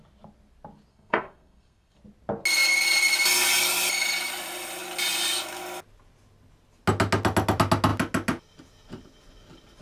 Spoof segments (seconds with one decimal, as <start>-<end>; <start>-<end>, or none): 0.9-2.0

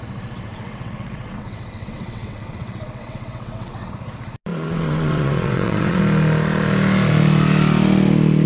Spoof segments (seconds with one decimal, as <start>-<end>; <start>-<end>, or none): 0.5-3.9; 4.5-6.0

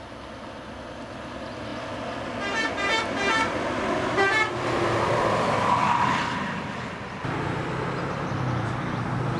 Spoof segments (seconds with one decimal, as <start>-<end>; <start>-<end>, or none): none

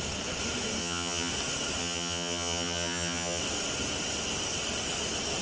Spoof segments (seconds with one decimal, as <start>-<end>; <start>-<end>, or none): 0.8-1.3; 1.8-3.4